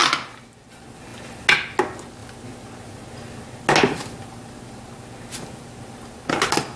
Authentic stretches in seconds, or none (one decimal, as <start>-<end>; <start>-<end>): 0.0-6.8